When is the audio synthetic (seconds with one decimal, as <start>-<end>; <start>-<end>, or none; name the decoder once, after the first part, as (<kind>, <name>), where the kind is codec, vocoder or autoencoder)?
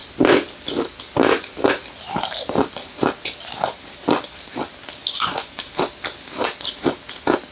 5.0-5.6 (vocoder, Vocos)